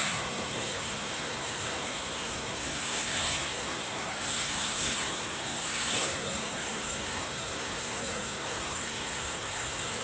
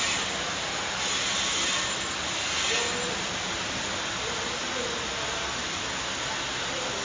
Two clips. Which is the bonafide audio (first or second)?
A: second